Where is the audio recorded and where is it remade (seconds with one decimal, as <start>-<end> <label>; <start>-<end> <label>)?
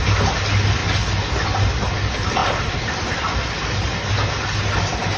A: 0.0-5.2 recorded